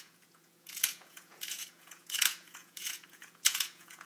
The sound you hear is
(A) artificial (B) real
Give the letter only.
A